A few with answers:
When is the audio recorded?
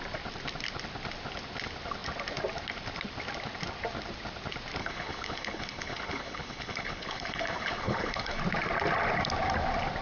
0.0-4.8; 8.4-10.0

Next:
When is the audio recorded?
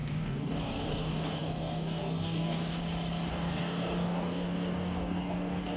2.8-3.3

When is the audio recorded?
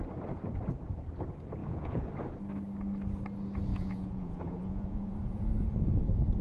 0.0-1.6; 2.1-3.7; 6.0-6.4